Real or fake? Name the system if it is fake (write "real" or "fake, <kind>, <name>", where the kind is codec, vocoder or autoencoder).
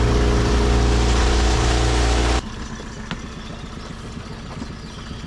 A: real